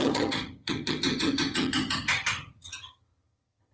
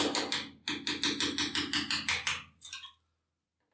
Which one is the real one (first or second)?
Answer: second